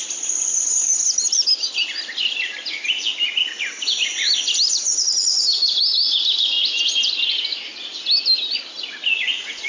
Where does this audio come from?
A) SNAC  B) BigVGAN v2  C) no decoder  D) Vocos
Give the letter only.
C